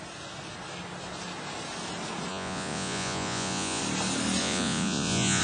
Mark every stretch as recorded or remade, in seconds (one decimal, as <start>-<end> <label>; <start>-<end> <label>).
0.0-2.3 recorded; 2.3-3.8 remade; 3.8-4.4 recorded; 4.4-5.4 remade